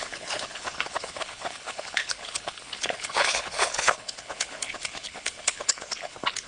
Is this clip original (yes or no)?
no